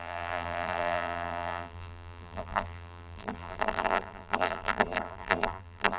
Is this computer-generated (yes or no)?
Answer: yes